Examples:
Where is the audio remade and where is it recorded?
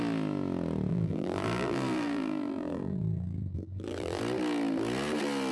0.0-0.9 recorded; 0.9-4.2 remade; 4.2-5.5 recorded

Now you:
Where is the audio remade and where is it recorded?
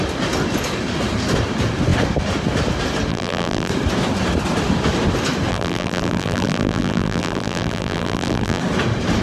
0.0-3.1 recorded; 3.1-3.7 remade; 3.7-5.5 recorded; 5.5-8.6 remade; 8.6-9.2 recorded